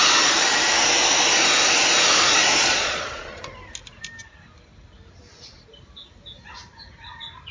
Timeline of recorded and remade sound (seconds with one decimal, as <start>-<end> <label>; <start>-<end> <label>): 0.0-2.5 recorded; 2.5-3.4 remade; 3.4-7.5 recorded